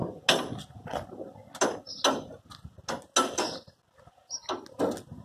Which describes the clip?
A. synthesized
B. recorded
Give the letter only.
B